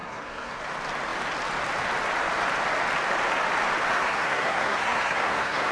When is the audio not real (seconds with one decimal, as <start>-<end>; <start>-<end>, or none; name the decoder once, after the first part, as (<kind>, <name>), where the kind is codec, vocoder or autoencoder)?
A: 0.0-0.6 (codec, SNAC); 3.9-5.7